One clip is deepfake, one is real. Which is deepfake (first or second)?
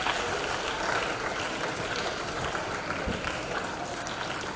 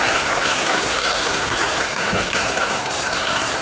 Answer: second